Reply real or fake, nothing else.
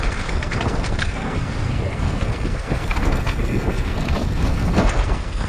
fake